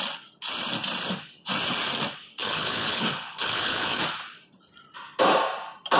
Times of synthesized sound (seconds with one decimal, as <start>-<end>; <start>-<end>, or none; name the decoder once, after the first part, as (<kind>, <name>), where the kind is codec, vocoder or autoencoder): 2.4-4.0 (codec, HILCodec)